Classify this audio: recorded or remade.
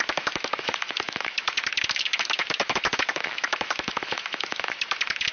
remade